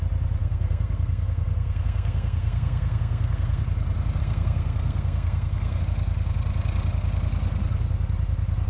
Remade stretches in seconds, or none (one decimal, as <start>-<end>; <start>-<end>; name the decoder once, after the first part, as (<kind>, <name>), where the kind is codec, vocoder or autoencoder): 0.4-3.6 (codec, SNAC); 4.2-5.8